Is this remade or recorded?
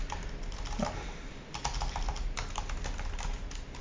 recorded